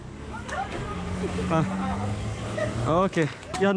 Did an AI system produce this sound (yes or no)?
yes